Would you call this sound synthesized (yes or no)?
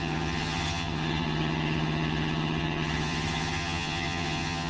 yes